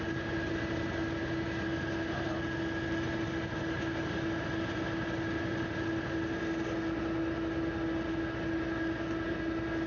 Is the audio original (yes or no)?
yes